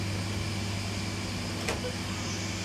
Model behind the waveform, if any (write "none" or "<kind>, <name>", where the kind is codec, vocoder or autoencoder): none